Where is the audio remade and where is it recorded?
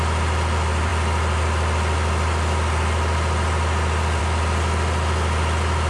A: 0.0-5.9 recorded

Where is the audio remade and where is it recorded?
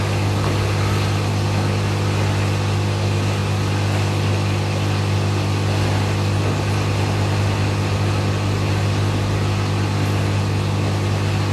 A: 0.0-11.5 recorded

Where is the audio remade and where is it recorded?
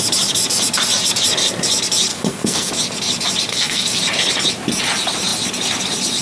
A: 0.0-2.1 recorded; 2.1-2.7 remade; 2.7-3.5 recorded; 3.5-4.0 remade; 4.0-6.2 recorded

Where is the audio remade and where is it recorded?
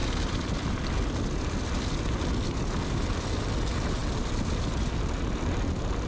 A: 0.0-6.1 recorded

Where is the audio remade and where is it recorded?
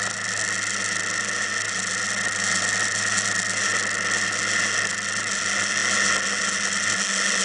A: 0.0-7.4 recorded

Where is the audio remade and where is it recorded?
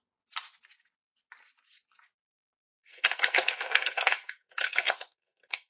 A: 0.0-2.6 recorded; 2.6-5.7 remade